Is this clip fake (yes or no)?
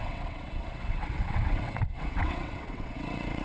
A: yes